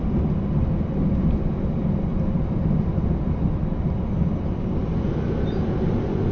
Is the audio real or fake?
real